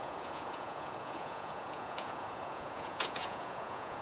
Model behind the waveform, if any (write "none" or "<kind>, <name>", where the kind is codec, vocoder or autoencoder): vocoder, Vocos